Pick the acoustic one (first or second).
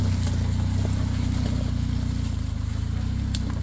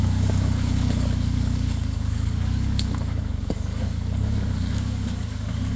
first